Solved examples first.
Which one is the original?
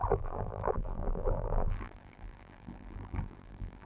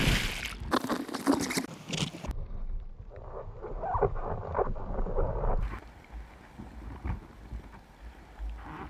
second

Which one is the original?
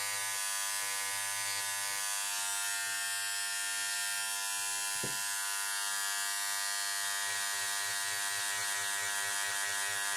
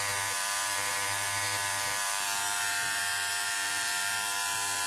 first